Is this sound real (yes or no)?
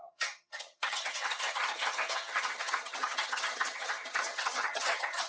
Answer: no